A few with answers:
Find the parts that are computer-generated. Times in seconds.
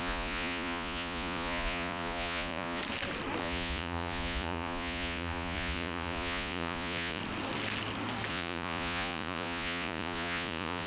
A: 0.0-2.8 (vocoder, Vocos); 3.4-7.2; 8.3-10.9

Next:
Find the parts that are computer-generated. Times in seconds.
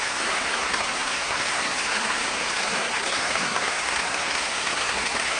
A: 0.0-5.4 (codec, SNAC)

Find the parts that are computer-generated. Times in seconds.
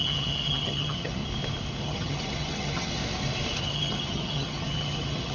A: 0.0-1.2 (vocoder, HiFi-GAN); 1.8-3.0; 3.6-5.3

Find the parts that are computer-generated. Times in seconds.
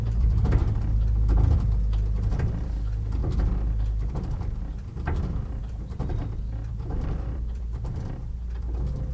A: 0.0-0.6 (vocoder, BigVGAN v2); 2.5-3.2; 4.1-9.1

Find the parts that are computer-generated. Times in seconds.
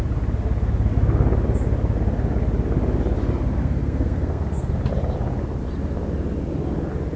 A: 3.6-4.7 (codec, SNAC)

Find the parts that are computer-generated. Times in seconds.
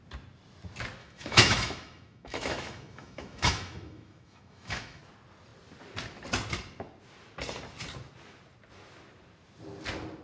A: 1.0-5.0 (autoencoder, DAC-VAE)